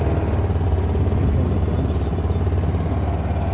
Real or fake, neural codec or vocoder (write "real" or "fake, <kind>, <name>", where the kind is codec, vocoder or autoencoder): real